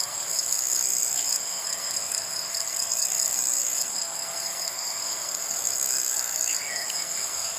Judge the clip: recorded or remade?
remade